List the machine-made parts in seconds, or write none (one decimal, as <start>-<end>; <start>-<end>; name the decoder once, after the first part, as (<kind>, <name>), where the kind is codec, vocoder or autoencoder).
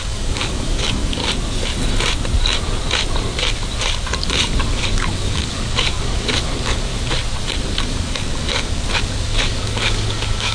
0.0-1.2 (codec, DAC); 4.7-6.9; 7.8-10.5